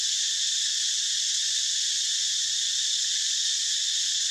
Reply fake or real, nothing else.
real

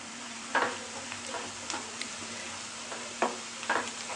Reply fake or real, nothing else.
fake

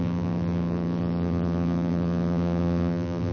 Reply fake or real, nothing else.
fake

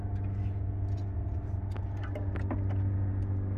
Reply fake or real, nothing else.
real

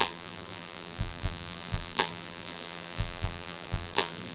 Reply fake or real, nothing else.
fake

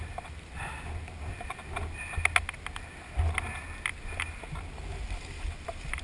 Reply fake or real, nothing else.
real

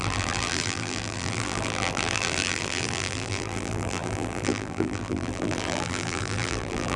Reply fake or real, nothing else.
fake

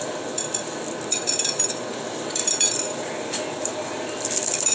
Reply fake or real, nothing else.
fake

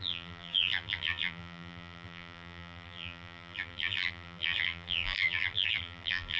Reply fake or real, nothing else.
fake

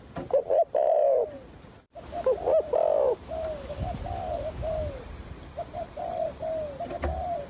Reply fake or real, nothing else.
fake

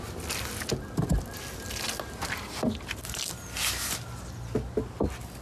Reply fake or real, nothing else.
real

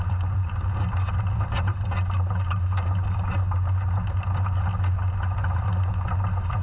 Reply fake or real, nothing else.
real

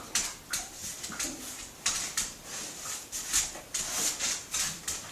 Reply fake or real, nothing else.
real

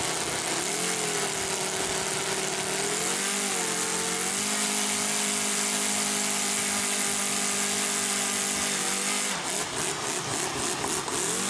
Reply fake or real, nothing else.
real